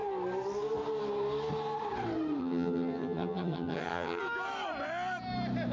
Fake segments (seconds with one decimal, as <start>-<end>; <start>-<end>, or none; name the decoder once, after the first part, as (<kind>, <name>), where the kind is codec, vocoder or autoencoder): 2.4-4.2 (vocoder, HiFi-GAN)